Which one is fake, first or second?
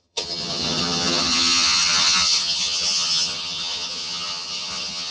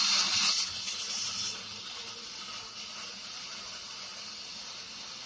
first